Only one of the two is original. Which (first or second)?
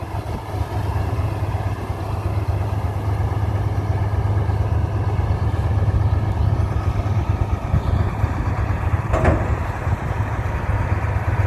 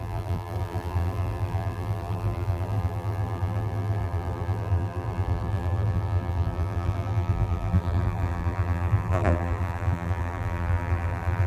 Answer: first